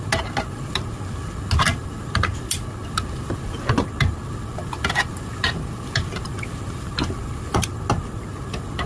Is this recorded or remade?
recorded